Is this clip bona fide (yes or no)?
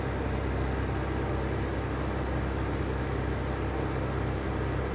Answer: yes